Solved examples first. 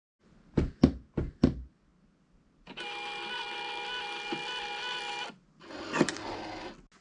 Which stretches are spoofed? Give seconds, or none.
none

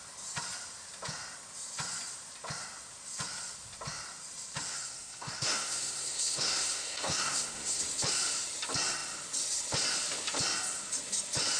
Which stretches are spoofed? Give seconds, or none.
4.7-7.8 (codec, SNAC)

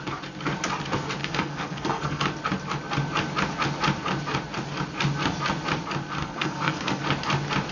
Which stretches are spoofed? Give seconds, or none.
1.2-2.2 (codec, SNAC); 6.2-7.0

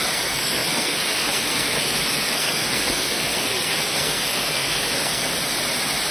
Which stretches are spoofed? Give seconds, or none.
0.0-5.3 (codec, SNAC)

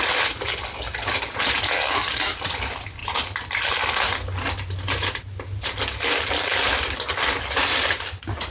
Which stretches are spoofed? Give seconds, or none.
none

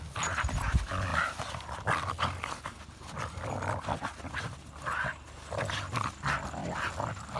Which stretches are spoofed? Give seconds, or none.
none

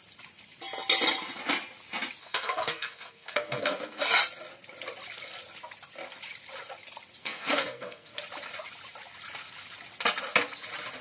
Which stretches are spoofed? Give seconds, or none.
2.2-4.0 (codec, SNAC); 7.2-8.1

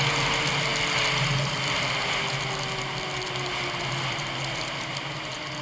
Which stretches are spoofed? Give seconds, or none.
none